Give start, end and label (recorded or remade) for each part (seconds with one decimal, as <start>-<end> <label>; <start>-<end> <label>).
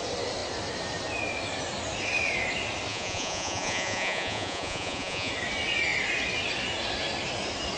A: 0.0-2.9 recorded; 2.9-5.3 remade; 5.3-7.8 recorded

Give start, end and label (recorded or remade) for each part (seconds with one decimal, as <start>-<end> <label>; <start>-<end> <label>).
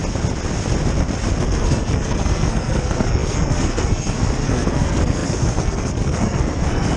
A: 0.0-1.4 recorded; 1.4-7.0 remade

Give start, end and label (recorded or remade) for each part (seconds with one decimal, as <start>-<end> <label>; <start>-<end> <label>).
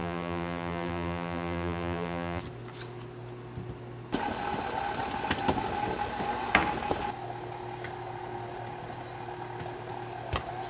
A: 0.0-2.4 remade; 2.4-10.7 recorded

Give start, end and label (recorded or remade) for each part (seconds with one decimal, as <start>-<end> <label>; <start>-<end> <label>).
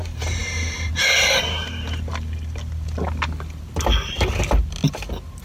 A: 0.0-2.1 remade; 2.1-5.4 recorded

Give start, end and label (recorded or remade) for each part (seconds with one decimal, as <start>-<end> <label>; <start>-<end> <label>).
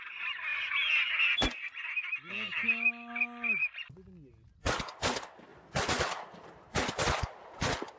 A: 0.0-8.0 recorded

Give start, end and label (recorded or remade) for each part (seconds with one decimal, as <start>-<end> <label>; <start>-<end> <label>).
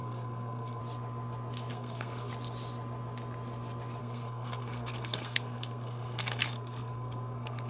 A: 0.0-0.8 remade; 0.8-1.7 recorded; 1.7-2.3 remade; 2.3-4.0 recorded; 4.0-7.7 remade